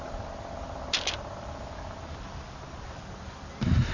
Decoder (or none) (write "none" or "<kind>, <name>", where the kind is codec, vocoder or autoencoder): none